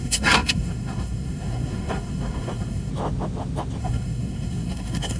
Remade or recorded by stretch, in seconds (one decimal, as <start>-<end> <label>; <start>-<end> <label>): 0.0-2.9 remade; 2.9-3.8 recorded; 3.8-5.2 remade